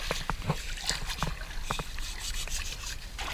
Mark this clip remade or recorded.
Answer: recorded